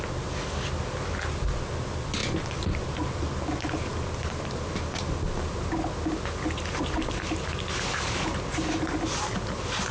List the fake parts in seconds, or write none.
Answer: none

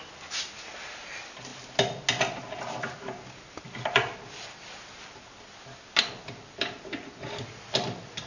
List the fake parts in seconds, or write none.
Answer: none

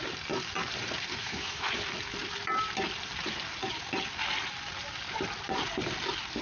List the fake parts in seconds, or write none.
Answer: 1.2-1.7 (autoencoder, DAC-VAE)

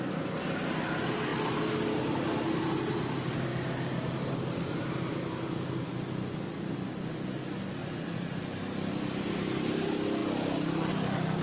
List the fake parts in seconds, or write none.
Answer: 7.8-8.4 (vocoder, Vocos)